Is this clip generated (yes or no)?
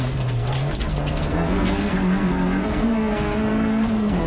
yes